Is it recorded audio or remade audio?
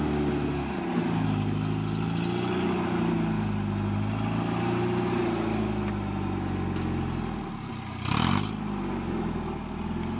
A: recorded